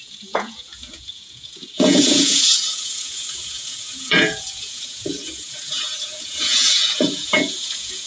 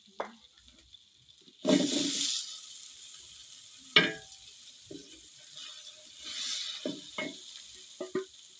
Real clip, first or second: second